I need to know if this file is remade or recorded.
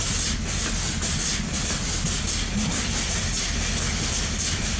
remade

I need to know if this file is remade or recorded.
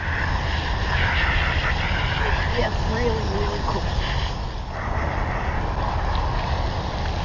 recorded